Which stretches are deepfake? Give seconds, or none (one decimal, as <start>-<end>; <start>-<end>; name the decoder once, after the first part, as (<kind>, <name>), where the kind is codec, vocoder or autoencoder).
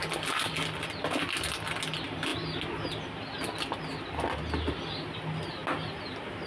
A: none